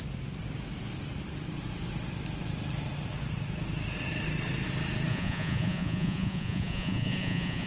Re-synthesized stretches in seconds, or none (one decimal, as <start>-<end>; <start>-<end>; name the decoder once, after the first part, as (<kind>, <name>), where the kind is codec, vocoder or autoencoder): 5.1-7.7 (vocoder, Vocos)